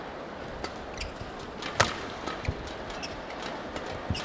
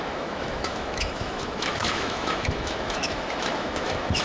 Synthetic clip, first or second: second